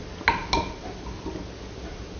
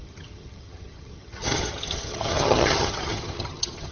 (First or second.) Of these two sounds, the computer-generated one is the second